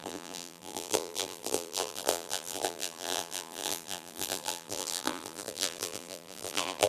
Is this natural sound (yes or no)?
no